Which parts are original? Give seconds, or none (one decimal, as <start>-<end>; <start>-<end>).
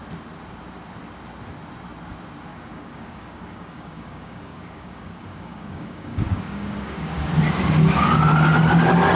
0.0-2.5; 7.3-9.1